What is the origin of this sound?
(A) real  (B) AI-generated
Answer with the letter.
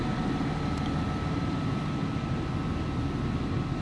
A